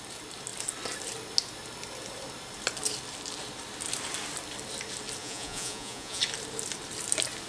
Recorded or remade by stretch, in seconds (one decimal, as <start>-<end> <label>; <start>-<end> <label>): 0.0-5.2 recorded; 5.2-6.2 remade; 6.2-7.5 recorded